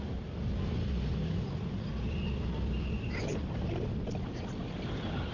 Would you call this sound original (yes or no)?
yes